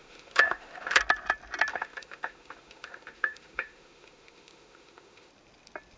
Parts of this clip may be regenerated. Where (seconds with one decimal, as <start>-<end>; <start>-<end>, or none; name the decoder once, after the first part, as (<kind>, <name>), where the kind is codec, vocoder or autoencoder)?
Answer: 0.0-1.0 (autoencoder, DAC-VAE); 1.7-5.3